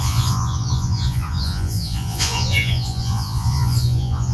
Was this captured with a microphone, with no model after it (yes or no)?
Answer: no